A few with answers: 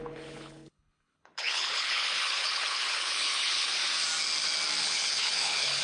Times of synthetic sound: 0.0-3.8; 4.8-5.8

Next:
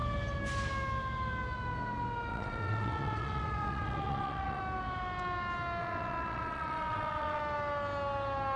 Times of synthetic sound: 2.3-4.6; 5.8-7.4